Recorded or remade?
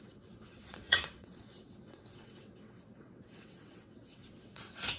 remade